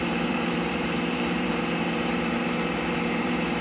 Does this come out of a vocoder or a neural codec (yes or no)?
yes